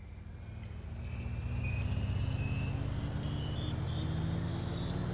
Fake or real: real